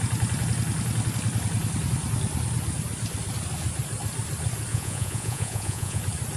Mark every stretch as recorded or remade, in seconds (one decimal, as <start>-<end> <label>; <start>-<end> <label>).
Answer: 0.0-4.7 recorded; 4.7-6.0 remade; 6.0-6.4 recorded